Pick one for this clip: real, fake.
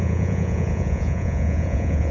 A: fake